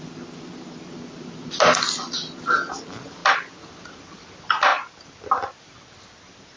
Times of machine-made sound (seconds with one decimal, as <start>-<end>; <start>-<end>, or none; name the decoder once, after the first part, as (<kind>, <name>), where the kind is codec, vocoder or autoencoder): none